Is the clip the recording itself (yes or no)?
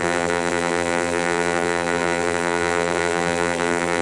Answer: no